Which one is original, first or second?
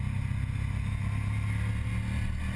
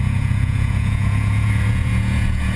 first